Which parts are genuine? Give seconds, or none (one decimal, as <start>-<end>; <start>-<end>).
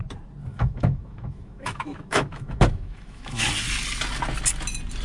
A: 0.0-0.5; 3.5-5.0